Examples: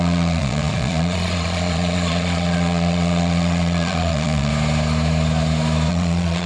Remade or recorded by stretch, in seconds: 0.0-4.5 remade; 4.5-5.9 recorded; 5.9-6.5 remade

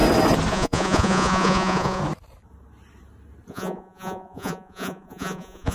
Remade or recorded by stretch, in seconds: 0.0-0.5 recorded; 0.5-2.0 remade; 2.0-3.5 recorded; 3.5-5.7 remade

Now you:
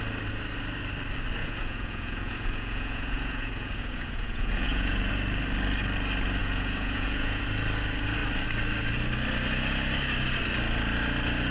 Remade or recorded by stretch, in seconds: 0.0-1.4 recorded; 1.4-5.1 remade; 5.1-6.4 recorded; 6.4-7.4 remade; 7.4-11.5 recorded